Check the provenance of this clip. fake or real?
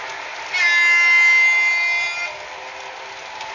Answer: real